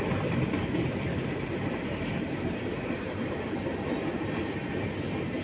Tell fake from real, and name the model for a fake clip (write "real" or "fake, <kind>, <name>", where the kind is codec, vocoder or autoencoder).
fake, vocoder, BigVGAN v2